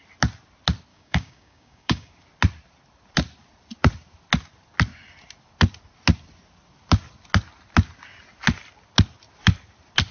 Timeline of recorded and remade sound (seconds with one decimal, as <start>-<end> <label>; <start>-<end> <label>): 0.0-0.9 recorded; 0.9-2.1 remade; 2.1-10.1 recorded